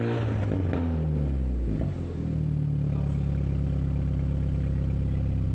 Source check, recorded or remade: recorded